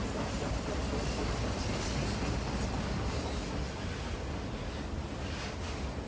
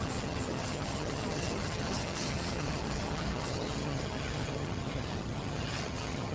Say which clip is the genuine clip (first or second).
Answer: first